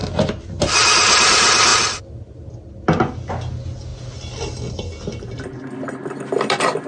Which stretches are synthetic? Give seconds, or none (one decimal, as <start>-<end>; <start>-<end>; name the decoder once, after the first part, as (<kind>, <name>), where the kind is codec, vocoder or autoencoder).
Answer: none

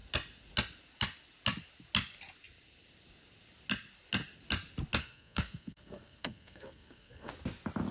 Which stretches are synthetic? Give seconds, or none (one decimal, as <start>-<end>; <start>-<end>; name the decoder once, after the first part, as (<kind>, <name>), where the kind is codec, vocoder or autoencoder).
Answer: 5.0-7.3 (codec, SNAC)

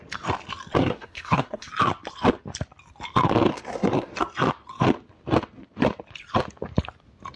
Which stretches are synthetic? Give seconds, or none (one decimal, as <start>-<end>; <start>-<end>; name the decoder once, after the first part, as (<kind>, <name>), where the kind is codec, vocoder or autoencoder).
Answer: 0.8-1.7 (codec, SNAC); 3.5-4.1

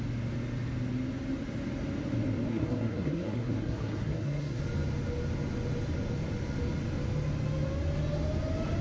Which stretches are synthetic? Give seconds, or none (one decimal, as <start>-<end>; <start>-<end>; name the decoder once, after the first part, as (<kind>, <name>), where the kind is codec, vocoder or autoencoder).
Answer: 2.5-4.6 (codec, SNAC)

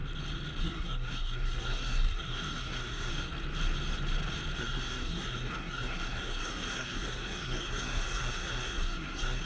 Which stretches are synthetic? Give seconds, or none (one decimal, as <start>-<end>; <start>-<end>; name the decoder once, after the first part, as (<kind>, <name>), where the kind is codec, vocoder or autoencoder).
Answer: 0.6-3.1 (codec, SNAC); 4.6-9.5

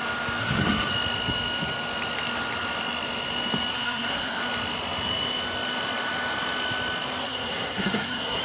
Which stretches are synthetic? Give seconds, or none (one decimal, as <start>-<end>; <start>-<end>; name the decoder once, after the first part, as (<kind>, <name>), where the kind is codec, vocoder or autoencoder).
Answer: 0.4-0.9 (codec, SNAC); 3.7-4.4; 7.2-8.4

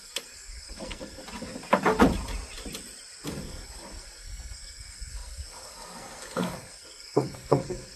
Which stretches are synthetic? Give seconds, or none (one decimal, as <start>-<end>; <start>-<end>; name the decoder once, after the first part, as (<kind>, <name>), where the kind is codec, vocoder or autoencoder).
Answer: 0.0-1.2 (codec, SNAC); 3.3-8.0

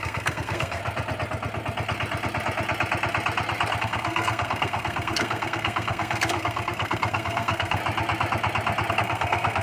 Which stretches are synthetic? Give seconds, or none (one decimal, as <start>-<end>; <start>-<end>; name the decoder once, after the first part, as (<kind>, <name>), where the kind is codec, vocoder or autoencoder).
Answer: 0.0-0.8 (codec, SNAC); 3.8-7.8; 8.9-9.6